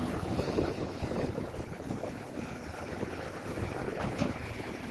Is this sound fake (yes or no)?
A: yes